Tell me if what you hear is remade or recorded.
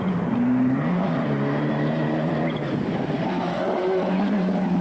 remade